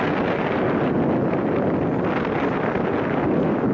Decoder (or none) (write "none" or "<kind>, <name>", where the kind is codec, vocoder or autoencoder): none